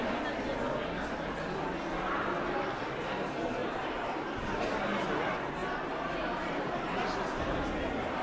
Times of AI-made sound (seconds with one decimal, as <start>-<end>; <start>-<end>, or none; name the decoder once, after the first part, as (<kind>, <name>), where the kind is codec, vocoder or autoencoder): 3.6-4.8 (vocoder, BigVGAN v2); 5.6-7.4